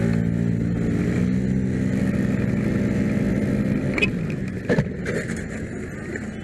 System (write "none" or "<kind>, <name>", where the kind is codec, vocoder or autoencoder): none